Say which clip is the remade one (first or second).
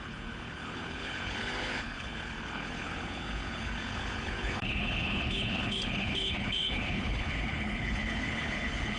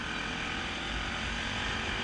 first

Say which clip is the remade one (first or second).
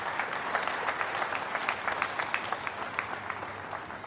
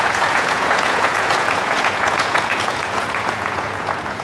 second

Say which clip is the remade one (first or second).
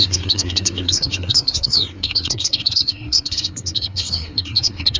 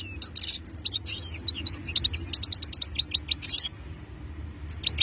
first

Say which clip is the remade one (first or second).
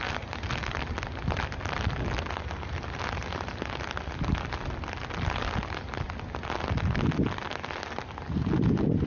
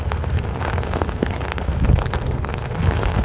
second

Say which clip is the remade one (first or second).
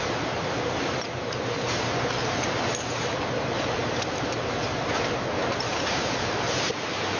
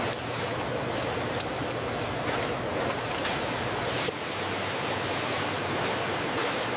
first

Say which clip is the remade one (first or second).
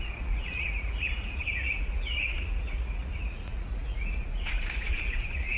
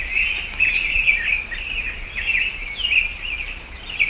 first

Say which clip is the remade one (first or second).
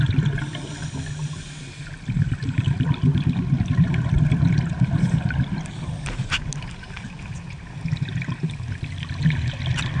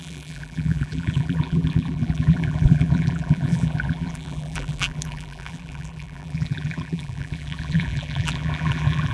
second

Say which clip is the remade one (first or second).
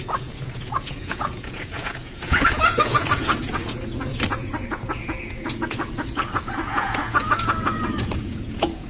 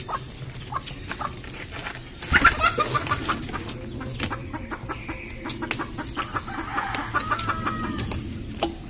first